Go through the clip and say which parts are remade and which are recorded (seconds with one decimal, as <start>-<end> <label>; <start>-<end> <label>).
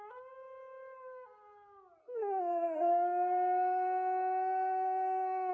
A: 0.0-2.0 recorded; 2.0-5.5 remade